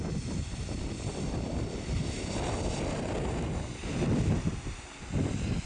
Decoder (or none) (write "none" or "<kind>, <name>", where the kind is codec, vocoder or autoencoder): none